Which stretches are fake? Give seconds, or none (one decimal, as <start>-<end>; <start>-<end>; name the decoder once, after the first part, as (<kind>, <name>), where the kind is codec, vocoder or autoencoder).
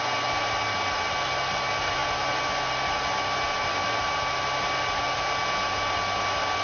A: none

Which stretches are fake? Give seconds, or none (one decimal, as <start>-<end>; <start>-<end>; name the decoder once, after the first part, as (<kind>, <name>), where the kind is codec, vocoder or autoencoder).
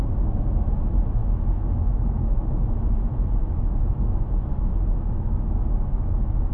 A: 1.2-2.9 (autoencoder, DAC-VAE); 3.4-6.5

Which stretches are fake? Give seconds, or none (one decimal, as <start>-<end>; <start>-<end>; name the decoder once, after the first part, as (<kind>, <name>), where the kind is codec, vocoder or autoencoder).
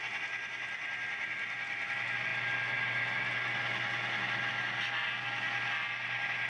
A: none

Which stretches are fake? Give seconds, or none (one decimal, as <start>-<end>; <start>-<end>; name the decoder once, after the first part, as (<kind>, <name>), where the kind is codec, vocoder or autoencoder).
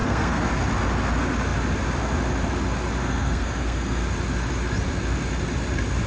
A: 0.0-0.5 (codec, SNAC); 3.0-4.0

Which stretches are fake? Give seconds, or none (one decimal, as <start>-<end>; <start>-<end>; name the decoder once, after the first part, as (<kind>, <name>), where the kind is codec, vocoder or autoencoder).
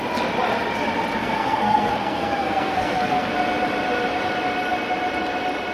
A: 1.2-3.3 (codec, SNAC)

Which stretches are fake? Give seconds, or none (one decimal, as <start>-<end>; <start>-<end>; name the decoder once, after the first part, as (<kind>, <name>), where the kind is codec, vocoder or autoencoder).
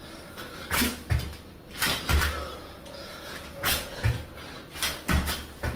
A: 2.6-4.1 (vocoder, Vocos)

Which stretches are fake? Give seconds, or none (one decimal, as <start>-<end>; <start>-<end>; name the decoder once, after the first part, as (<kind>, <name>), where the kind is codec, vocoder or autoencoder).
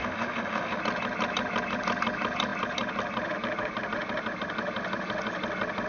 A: 0.0-0.8 (autoencoder, DAC-VAE)